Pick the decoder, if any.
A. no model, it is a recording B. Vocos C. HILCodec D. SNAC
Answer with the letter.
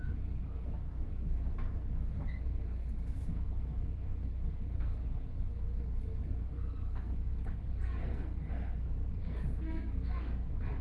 D